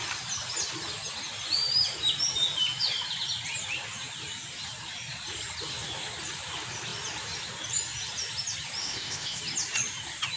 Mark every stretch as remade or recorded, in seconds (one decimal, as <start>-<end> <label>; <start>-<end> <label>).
0.0-8.8 recorded; 8.8-9.4 remade; 9.4-10.4 recorded